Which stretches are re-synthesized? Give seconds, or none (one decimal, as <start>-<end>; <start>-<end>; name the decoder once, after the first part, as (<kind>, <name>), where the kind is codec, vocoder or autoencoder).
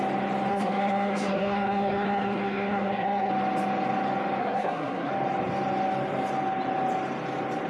0.5-3.3 (codec, SNAC); 4.4-5.1